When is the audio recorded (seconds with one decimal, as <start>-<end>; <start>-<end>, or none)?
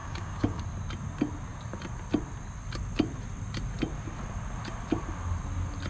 0.6-5.9